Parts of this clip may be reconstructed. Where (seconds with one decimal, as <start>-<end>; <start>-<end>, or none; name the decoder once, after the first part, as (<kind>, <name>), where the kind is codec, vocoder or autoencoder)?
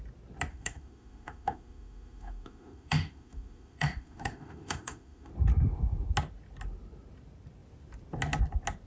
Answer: 0.5-5.3 (autoencoder, DAC-VAE)